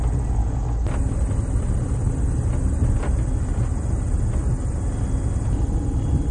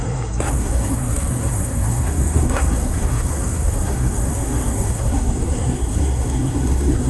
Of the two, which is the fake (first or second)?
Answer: second